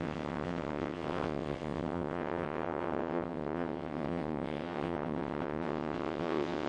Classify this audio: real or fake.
fake